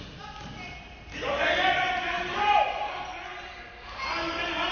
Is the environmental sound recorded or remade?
recorded